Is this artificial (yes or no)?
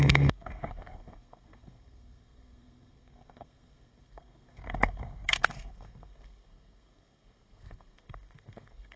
yes